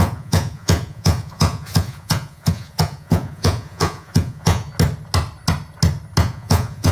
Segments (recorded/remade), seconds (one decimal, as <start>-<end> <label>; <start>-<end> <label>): 0.0-4.7 remade; 4.7-6.2 recorded; 6.2-6.9 remade